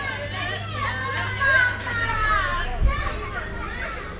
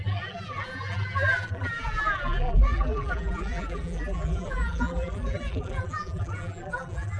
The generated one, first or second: second